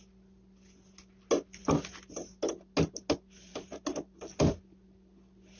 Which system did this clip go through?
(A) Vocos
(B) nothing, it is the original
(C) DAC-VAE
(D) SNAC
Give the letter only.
B